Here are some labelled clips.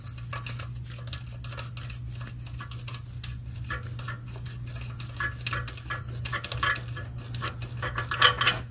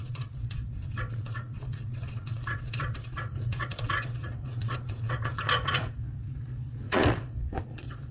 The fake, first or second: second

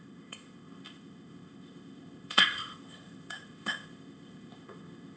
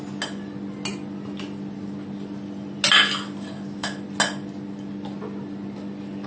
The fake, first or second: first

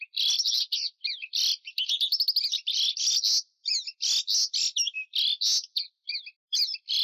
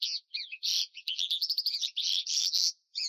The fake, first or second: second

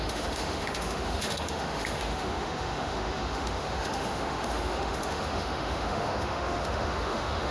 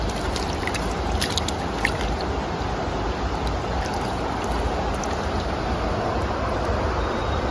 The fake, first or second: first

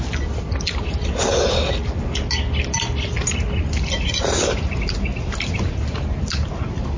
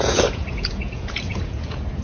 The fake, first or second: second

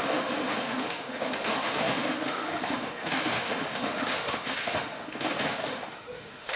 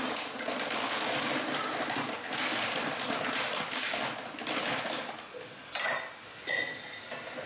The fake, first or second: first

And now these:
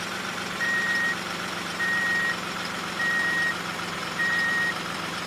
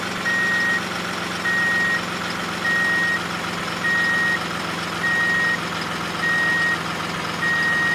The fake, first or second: first